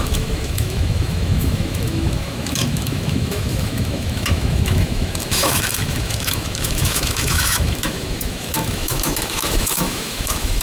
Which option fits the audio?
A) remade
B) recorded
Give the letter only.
A